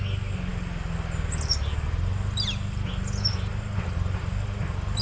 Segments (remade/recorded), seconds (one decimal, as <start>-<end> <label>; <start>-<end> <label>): 0.0-5.0 recorded